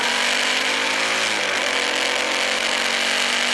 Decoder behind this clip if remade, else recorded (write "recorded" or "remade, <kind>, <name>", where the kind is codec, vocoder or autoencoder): recorded